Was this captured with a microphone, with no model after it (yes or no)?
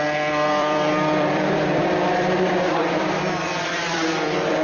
no